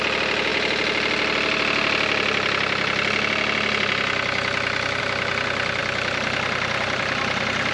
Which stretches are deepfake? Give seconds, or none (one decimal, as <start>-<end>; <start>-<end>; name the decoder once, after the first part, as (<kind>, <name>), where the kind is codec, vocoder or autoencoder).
none